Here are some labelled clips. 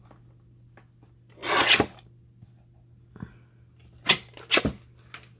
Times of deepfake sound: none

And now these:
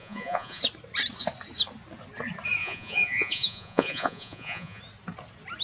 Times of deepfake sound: 0.0-0.6 (vocoder, Vocos); 2.6-4.8

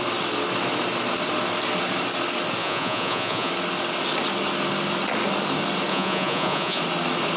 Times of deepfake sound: 2.6-3.5 (vocoder, Vocos); 5.9-6.8